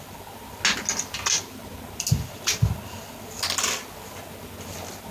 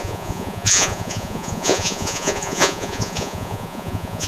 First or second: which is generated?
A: second